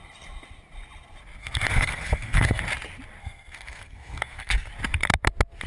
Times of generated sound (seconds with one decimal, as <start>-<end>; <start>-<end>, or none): 1.4-2.6; 3.2-4.7